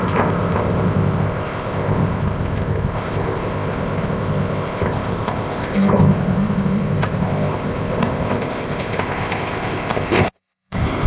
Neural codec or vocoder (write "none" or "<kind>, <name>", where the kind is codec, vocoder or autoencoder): codec, ZipCodec